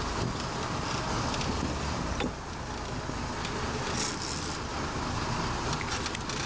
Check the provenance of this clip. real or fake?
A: real